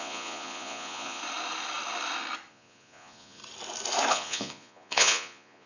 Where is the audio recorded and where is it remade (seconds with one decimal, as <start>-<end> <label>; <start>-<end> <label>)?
0.0-1.2 remade; 1.2-2.5 recorded; 2.5-3.4 remade; 3.4-4.1 recorded; 4.1-5.7 remade